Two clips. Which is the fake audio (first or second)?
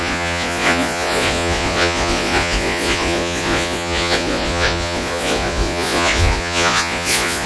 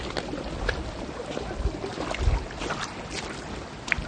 first